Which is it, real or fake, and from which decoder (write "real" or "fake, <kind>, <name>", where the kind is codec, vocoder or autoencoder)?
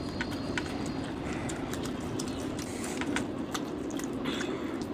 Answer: real